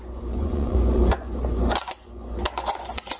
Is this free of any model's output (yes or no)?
no